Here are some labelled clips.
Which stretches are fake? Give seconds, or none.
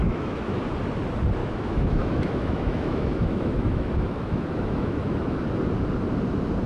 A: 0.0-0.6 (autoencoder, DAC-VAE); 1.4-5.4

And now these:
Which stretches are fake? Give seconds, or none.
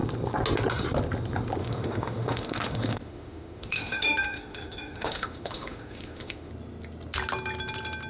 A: 1.6-6.5 (autoencoder, DAC-VAE)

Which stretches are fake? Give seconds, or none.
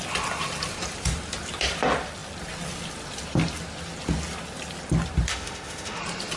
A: 5.3-6.0 (autoencoder, DAC-VAE)